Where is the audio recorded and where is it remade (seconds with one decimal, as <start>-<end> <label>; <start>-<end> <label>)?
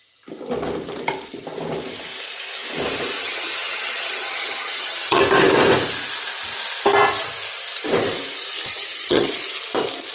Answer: 0.0-3.2 recorded; 3.2-5.2 remade; 5.2-8.7 recorded; 8.7-9.3 remade; 9.3-10.1 recorded